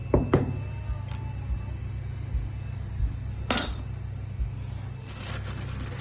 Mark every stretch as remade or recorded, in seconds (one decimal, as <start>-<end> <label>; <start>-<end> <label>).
0.0-6.0 recorded